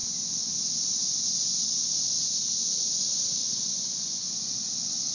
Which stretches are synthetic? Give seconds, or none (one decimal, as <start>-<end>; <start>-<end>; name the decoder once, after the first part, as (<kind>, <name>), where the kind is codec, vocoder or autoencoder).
3.4-4.3 (vocoder, Vocos)